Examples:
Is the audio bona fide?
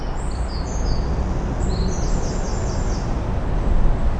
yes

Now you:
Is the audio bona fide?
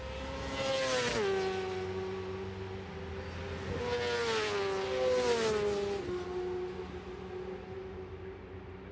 yes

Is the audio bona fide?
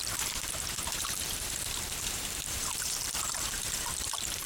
no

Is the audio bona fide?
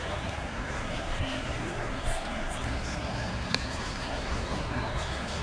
no